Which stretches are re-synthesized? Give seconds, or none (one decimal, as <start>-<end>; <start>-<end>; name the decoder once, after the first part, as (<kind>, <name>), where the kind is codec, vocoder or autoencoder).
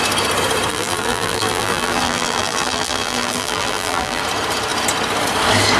0.7-4.2 (vocoder, BigVGAN v2)